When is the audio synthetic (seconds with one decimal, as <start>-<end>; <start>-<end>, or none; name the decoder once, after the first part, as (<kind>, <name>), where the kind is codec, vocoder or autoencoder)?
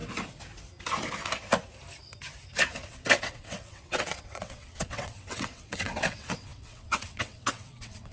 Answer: 2.9-8.1 (vocoder, WaveNeXt)